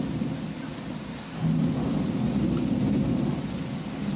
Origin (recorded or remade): recorded